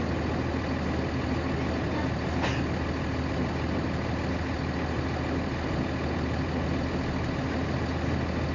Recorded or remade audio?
recorded